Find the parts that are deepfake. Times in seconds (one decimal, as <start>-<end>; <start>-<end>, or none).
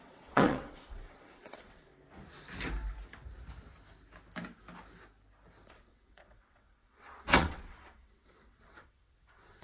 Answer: 0.0-1.9; 5.7-9.6